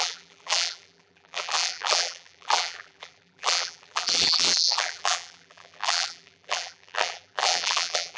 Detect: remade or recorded remade